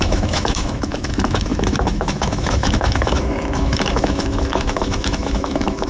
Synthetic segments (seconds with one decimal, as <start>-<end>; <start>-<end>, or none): 0.0-5.9